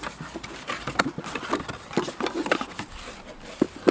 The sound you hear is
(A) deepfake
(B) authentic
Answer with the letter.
B